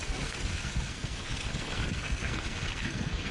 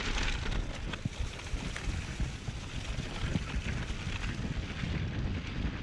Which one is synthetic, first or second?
first